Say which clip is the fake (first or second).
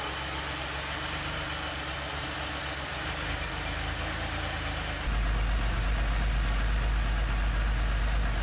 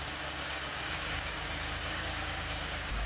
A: second